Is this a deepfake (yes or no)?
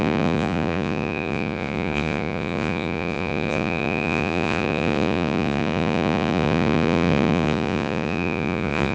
yes